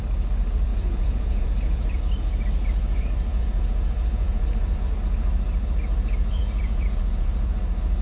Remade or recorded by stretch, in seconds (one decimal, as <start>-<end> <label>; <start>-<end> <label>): 0.0-0.7 recorded; 0.7-2.0 remade; 2.0-3.3 recorded; 3.3-4.8 remade; 4.8-6.4 recorded; 6.4-7.6 remade; 7.6-8.0 recorded